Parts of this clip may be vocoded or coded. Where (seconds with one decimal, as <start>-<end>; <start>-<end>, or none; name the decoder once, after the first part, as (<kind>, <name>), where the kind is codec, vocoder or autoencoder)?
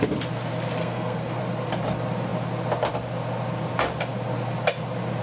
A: 0.8-1.4 (codec, SNAC)